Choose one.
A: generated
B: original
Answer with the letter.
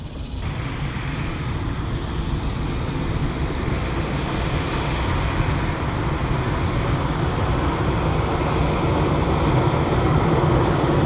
B